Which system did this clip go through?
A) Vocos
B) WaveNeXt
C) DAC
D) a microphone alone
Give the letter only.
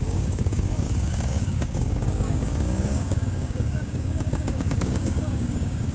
C